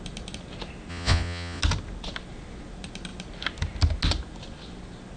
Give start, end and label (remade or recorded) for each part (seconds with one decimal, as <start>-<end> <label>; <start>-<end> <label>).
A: 0.0-0.9 recorded; 0.9-1.6 remade; 1.6-5.2 recorded